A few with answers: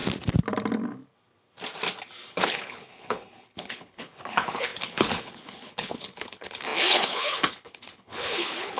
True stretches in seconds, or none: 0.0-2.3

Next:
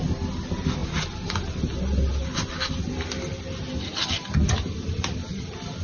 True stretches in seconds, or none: 0.0-5.8

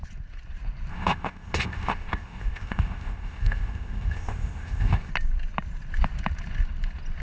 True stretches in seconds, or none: 0.0-0.9; 5.1-7.2